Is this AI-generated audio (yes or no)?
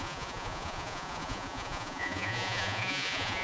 yes